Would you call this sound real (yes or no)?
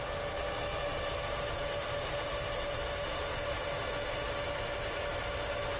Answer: yes